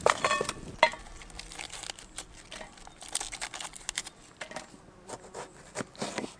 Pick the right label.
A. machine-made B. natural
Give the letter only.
B